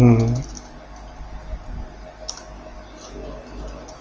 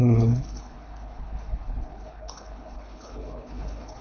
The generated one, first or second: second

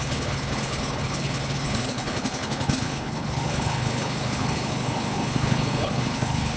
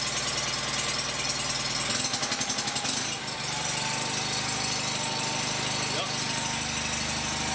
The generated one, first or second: first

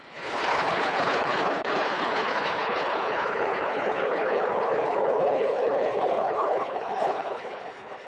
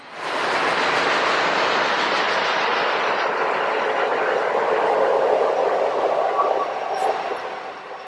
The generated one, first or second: first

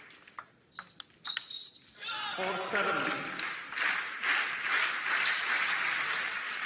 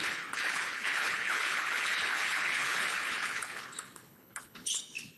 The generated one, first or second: second